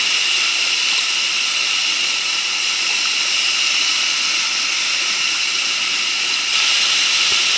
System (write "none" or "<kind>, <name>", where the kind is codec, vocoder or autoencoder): none